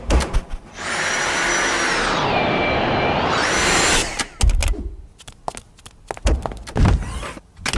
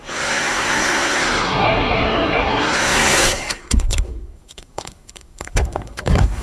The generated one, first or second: second